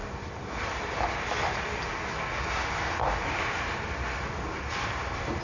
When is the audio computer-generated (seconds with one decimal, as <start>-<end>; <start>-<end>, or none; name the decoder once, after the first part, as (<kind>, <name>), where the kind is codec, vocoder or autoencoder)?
none